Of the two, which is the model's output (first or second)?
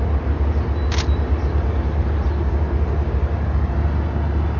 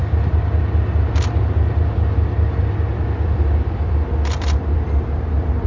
second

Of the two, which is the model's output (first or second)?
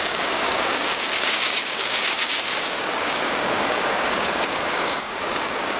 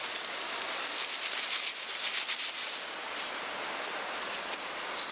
first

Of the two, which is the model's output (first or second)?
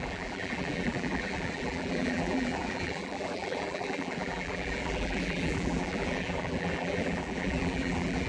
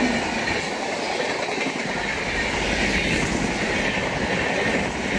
first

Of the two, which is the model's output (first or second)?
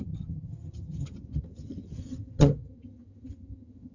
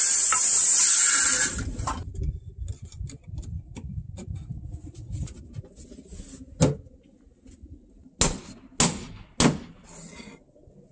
first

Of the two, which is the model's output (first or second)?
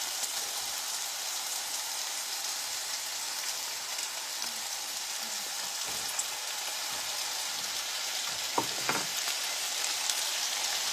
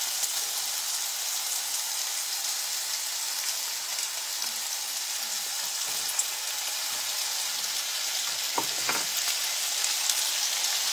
first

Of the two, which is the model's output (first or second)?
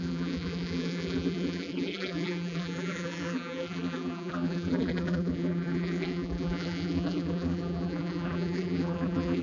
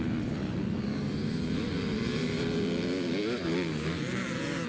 first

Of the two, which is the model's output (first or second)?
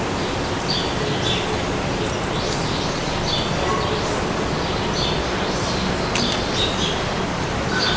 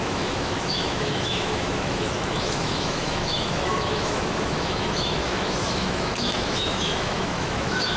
second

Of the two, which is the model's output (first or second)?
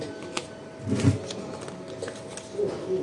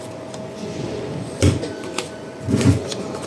second